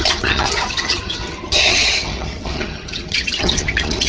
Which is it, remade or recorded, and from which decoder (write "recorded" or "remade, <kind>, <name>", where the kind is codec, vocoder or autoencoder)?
remade, vocoder, HiFi-GAN